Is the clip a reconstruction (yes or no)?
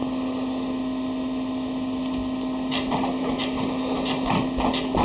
no